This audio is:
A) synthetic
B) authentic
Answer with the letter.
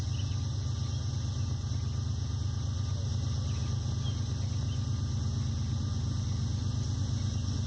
B